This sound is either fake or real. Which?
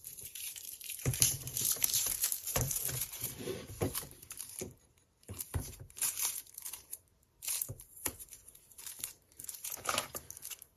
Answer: fake